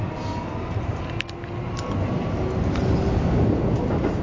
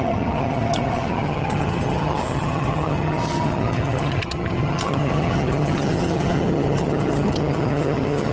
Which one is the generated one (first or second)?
second